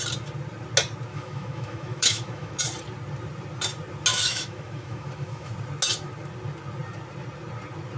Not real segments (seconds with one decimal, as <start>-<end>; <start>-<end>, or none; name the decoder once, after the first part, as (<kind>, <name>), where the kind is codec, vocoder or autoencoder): 1.1-2.6 (autoencoder, DAC-VAE); 4.1-5.5